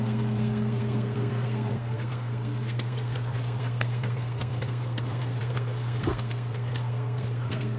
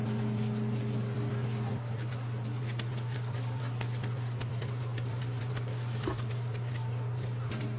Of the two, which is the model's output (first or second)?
first